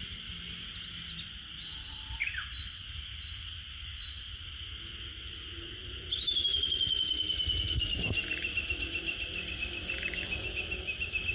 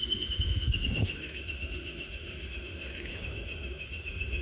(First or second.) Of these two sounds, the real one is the first